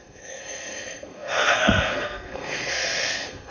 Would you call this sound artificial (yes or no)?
yes